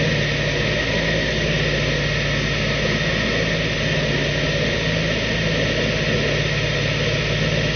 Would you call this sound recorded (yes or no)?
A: yes